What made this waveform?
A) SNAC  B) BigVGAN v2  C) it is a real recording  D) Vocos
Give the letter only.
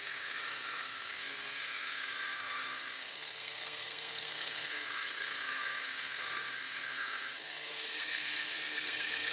A